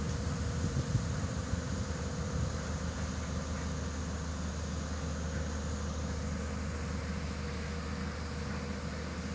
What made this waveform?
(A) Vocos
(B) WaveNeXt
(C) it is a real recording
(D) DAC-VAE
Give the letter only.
C